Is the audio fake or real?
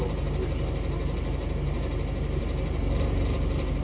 real